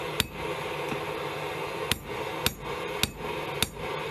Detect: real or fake real